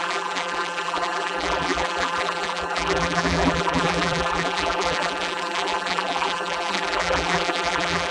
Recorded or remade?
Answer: remade